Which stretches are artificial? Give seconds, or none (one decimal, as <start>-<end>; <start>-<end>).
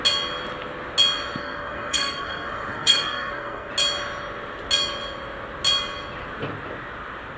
1.4-3.7